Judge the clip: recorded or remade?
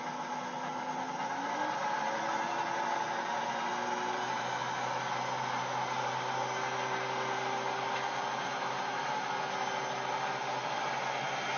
recorded